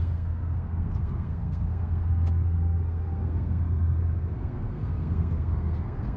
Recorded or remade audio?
remade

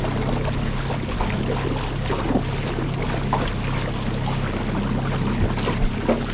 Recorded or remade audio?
recorded